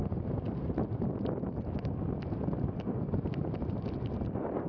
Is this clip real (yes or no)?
yes